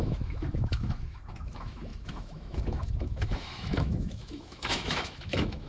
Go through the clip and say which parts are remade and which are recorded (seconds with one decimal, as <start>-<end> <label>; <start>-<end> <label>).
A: 0.0-5.7 remade